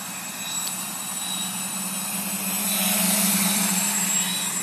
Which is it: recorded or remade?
remade